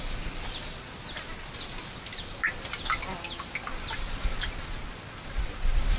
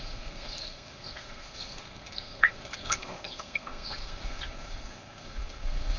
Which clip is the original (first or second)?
first